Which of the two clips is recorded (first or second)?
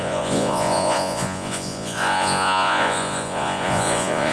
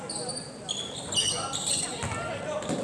second